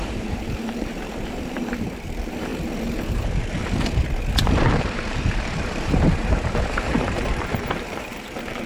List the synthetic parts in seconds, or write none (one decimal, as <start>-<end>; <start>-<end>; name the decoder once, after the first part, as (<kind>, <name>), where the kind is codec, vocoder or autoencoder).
0.0-2.5 (vocoder, BigVGAN v2); 4.6-8.7